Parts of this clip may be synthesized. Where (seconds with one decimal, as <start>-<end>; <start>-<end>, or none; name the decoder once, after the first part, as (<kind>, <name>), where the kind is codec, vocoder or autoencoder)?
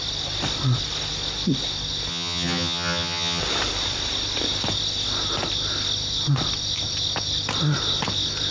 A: 2.1-3.4 (vocoder, HiFi-GAN)